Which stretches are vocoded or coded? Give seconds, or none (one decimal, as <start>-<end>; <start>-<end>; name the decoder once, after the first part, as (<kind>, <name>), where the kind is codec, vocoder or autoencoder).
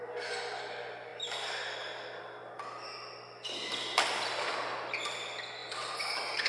none